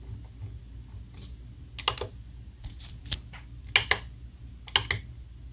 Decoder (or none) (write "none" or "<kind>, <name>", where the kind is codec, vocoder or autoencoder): none